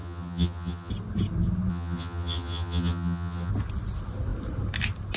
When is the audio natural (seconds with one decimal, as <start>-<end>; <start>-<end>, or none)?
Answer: 0.9-1.7; 3.5-5.2